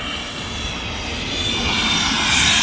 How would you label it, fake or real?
real